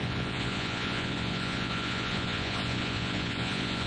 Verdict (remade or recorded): remade